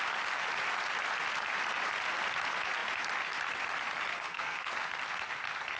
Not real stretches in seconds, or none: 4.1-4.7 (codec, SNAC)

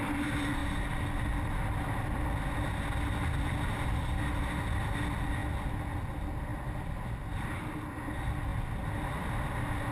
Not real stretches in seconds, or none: none

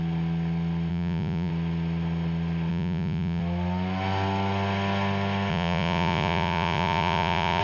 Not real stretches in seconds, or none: 0.9-1.5 (vocoder, Vocos); 2.7-3.4; 5.5-7.6

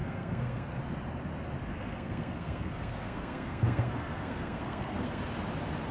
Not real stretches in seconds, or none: 0.0-0.8 (codec, SNAC); 1.7-5.2

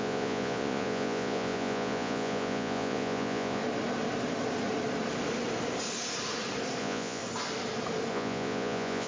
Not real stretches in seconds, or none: 0.0-3.6 (vocoder, Vocos); 6.8-7.2; 8.1-9.1

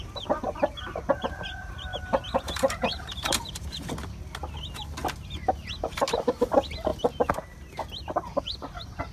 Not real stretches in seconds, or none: 1.9-3.9 (vocoder, BigVGAN v2)

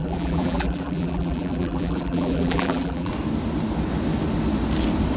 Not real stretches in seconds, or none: 0.0-3.1 (vocoder, BigVGAN v2)